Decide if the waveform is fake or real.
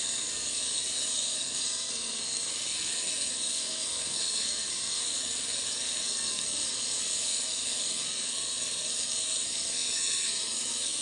fake